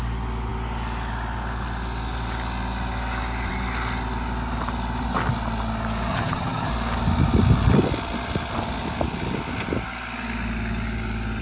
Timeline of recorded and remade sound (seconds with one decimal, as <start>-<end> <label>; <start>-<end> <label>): 0.0-6.1 recorded; 6.1-6.7 remade; 6.7-11.4 recorded